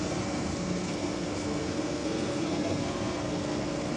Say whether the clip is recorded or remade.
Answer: remade